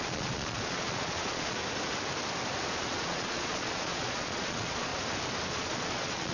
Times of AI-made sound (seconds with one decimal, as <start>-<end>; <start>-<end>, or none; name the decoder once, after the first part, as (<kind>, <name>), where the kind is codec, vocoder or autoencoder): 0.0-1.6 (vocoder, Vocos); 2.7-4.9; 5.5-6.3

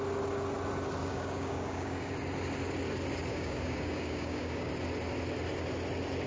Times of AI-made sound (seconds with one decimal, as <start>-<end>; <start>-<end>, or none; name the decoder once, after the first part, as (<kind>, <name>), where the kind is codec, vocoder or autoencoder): 1.0-2.1 (codec, DAC); 3.3-4.7

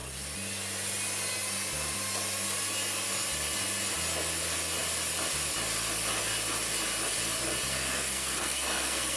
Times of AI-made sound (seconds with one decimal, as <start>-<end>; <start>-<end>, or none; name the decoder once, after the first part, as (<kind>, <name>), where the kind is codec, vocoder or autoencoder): 7.7-9.2 (codec, SNAC)

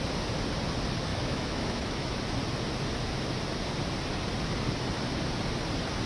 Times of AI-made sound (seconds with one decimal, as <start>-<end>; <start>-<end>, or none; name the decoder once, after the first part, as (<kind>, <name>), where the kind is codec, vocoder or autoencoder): 1.1-2.2 (autoencoder, DAC-VAE)

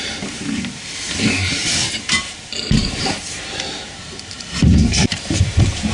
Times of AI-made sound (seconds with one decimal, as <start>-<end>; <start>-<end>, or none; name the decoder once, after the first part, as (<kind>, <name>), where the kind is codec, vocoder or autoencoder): 0.0-1.6 (vocoder, BigVGAN v2); 2.2-5.9